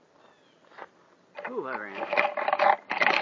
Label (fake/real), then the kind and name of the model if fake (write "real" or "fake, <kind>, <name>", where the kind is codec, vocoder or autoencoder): real